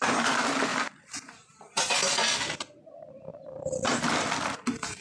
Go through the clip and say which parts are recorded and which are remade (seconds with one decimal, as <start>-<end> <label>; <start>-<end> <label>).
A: 0.0-0.7 recorded; 0.7-2.6 remade; 2.6-3.3 recorded; 3.3-4.1 remade; 4.1-5.0 recorded